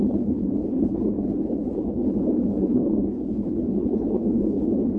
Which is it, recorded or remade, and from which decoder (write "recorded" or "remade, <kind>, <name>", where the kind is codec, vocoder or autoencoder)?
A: remade, codec, HILCodec